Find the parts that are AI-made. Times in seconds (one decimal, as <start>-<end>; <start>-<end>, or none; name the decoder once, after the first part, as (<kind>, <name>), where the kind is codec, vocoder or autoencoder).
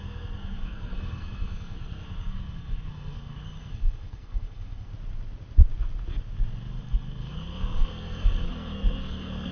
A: 0.0-4.9 (codec, SNAC); 6.8-9.5